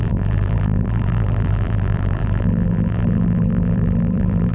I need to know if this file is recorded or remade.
remade